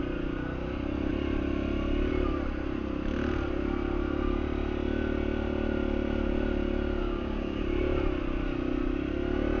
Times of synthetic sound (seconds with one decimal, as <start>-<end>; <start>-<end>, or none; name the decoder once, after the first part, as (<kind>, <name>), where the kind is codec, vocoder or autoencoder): 7.0-7.6 (codec, DAC)